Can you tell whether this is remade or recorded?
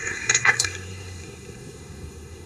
remade